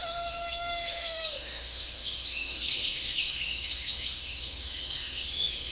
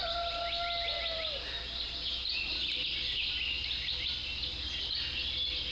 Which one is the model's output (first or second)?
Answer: first